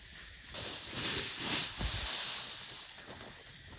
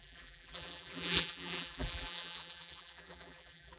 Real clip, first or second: first